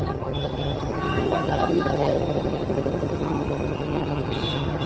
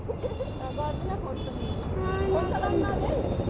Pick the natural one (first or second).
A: second